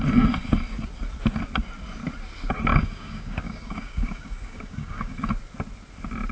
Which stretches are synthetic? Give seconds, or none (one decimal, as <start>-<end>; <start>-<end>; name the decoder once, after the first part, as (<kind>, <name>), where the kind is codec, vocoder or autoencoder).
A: 2.7-5.3 (codec, DAC)